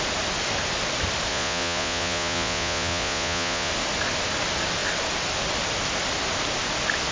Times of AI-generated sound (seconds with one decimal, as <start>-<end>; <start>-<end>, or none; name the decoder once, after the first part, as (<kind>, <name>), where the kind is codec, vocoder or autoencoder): 1.3-3.7 (vocoder, Vocos)